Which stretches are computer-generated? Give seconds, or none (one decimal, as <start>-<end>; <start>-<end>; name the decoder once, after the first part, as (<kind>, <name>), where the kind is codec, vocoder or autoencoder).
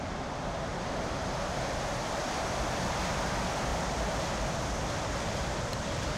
0.0-0.7 (vocoder, BigVGAN v2); 1.8-6.2